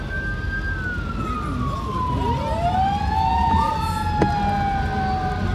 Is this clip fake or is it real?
real